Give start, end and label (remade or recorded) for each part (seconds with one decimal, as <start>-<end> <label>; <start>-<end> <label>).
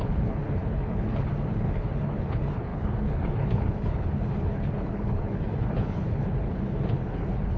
0.0-7.6 remade